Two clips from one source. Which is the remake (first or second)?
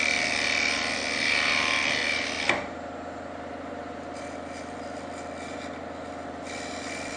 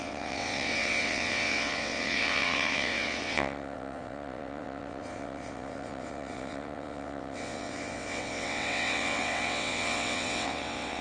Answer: second